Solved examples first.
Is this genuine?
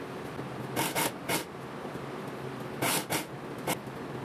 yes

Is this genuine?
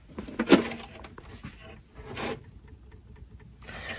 yes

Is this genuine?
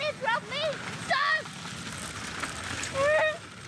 yes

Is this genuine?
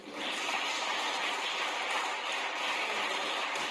no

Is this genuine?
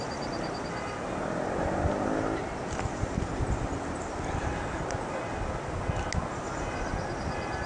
yes